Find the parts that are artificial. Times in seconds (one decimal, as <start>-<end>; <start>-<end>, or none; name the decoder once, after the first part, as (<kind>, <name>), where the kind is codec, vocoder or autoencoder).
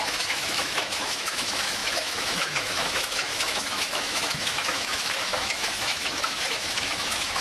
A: 0.0-7.4 (autoencoder, DAC-VAE)